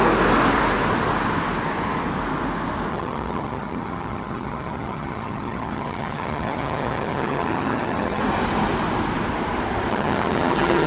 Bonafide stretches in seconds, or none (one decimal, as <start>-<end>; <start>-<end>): 0.0-2.9; 8.2-9.9

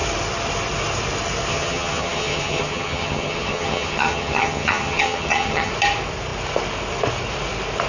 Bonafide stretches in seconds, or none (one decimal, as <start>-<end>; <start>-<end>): 0.0-1.5; 5.7-7.9